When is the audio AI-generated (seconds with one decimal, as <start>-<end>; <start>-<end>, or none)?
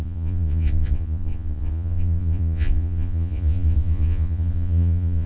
0.0-5.3